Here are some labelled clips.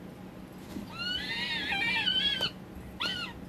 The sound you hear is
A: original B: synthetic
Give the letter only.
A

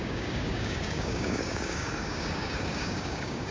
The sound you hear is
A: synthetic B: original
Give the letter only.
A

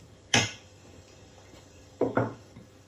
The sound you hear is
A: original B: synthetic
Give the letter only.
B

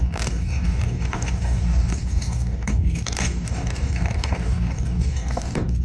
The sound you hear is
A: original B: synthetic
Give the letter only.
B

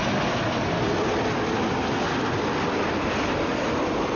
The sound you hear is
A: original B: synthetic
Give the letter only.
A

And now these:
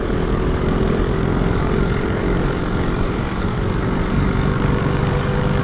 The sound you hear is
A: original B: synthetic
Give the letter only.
B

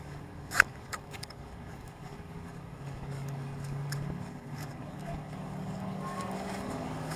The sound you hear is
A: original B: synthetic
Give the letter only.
B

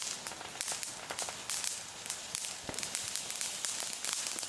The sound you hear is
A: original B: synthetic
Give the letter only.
A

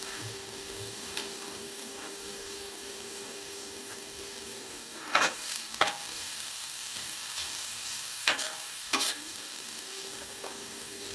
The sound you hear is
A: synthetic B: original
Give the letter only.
A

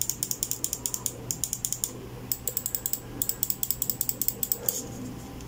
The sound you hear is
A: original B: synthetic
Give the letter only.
A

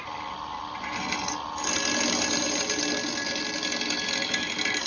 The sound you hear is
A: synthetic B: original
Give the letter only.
B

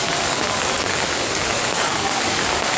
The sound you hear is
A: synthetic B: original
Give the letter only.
A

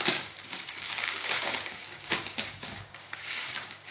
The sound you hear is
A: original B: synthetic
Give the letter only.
B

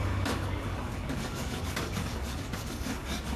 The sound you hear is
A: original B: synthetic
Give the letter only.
B